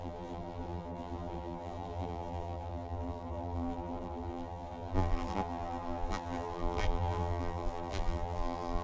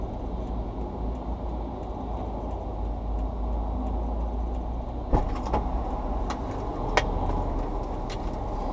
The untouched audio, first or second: second